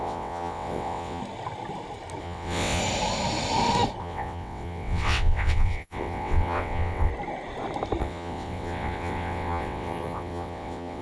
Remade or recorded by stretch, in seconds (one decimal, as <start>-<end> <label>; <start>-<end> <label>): 0.0-1.2 remade; 1.2-2.2 recorded; 2.2-2.8 remade; 2.8-4.0 recorded; 4.0-7.1 remade; 7.1-8.0 recorded; 8.0-11.0 remade